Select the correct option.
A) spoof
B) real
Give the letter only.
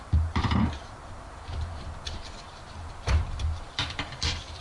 A